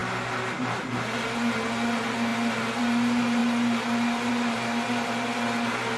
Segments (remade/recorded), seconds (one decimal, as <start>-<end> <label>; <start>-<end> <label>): 0.0-6.0 recorded